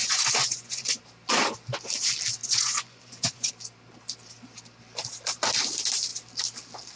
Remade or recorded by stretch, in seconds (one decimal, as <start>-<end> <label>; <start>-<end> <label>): 0.0-1.0 remade; 1.0-2.4 recorded; 2.4-3.5 remade; 3.5-7.0 recorded